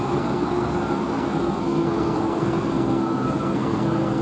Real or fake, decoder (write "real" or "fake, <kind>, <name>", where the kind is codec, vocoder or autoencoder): fake, codec, SNAC